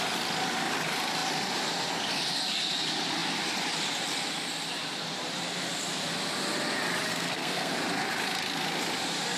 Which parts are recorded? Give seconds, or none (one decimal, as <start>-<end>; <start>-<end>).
0.0-7.1; 7.7-9.4